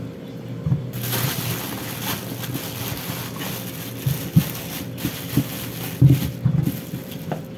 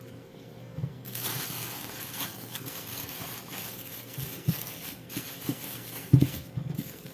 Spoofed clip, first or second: second